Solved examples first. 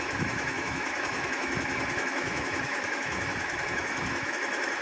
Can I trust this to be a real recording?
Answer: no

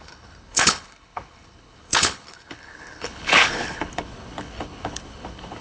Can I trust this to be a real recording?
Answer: no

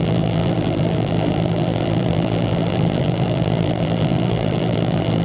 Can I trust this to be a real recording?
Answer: no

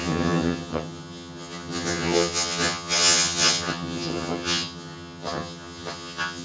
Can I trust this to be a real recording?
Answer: no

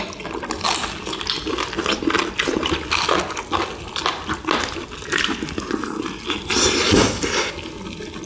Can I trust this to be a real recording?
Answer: yes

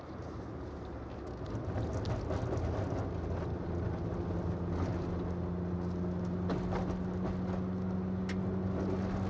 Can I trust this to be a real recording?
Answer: yes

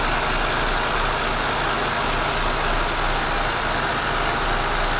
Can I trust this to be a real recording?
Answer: yes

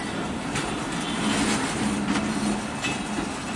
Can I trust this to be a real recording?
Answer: yes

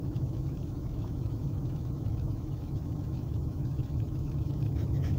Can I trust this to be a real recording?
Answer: no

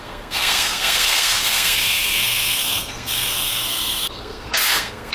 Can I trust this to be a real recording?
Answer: no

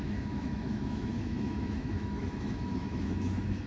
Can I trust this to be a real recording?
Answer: no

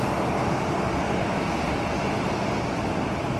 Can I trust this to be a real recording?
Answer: yes